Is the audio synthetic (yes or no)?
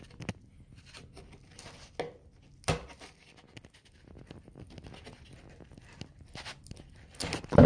no